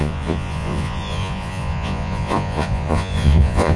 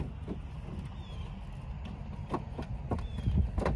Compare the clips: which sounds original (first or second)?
second